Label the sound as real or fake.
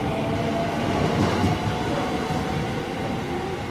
real